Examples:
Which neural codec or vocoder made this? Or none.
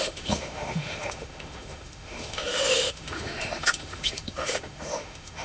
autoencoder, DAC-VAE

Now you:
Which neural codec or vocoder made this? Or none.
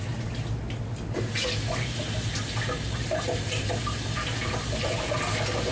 none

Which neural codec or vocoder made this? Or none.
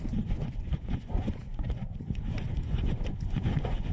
vocoder, Vocos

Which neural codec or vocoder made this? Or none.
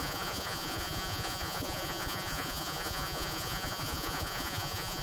vocoder, Vocos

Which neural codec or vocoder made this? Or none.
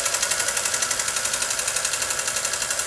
none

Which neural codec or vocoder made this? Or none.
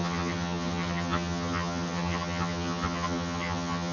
vocoder, HiFi-GAN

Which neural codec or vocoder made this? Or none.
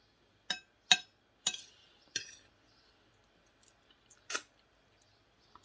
none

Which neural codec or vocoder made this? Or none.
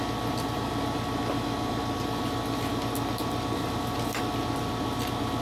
none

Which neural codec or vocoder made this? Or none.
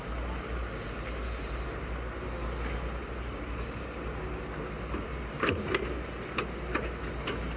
none